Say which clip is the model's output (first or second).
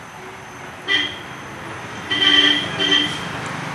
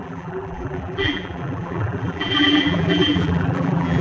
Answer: second